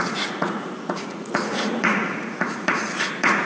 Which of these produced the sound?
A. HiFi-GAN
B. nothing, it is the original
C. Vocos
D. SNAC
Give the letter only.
C